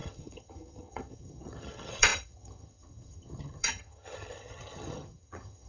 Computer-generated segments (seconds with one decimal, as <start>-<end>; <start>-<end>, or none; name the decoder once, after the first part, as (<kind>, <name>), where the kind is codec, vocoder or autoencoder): 0.0-5.7 (vocoder, HiFi-GAN)